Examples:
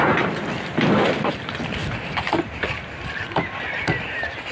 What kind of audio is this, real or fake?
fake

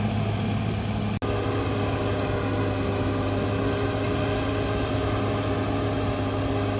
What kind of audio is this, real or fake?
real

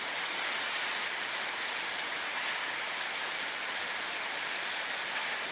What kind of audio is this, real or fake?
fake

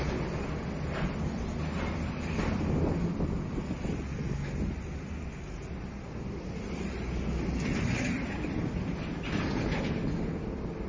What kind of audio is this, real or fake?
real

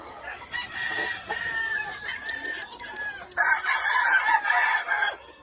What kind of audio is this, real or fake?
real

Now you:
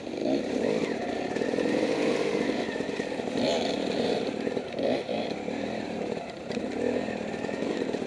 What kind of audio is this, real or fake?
fake